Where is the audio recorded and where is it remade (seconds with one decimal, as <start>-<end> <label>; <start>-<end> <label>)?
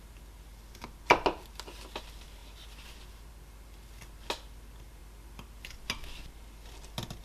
0.0-5.0 recorded; 5.0-5.8 remade; 5.8-7.2 recorded